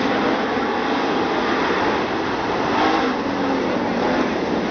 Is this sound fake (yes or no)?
no